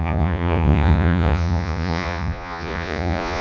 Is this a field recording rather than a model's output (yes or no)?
no